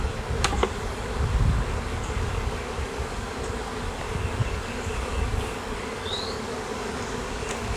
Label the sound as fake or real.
fake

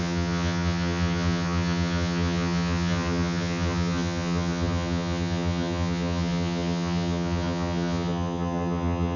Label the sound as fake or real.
fake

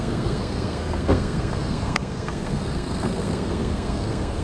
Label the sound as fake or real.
fake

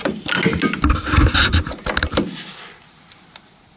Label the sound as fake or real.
real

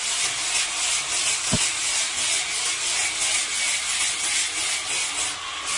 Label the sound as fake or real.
real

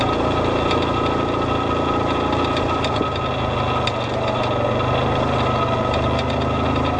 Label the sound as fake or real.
real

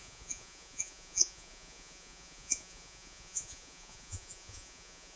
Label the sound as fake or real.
fake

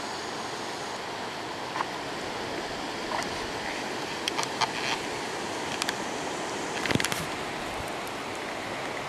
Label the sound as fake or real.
real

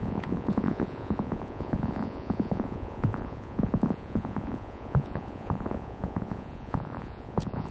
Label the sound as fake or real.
fake